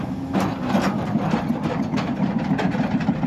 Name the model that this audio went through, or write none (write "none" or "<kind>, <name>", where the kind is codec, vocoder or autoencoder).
none